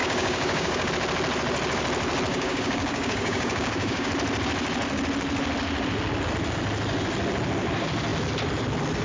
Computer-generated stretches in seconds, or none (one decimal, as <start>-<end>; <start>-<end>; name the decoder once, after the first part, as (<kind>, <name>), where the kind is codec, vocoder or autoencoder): 0.0-0.9 (codec, DAC); 2.3-4.1